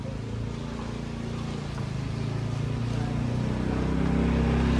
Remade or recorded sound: recorded